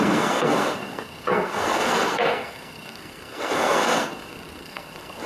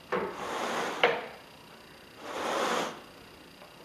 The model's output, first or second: first